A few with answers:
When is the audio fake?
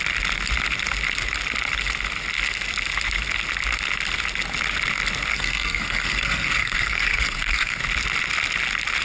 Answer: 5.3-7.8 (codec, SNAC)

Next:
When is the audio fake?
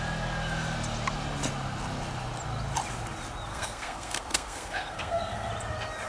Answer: 3.5-5.5 (codec, SNAC)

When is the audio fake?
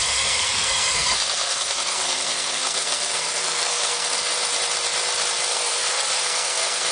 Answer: 0.0-4.2 (codec, SNAC); 5.5-6.9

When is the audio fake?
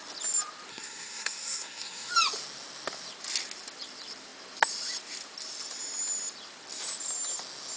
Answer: 0.7-2.1 (codec, SNAC)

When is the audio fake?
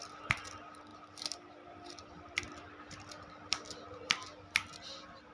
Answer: none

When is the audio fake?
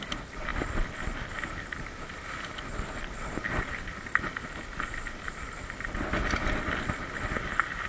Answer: none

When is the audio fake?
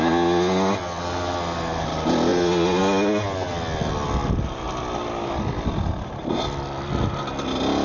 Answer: none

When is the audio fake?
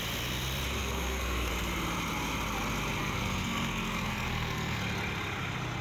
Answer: 0.8-1.5 (codec, SNAC); 3.0-4.8